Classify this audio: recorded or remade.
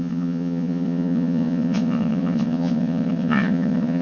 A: remade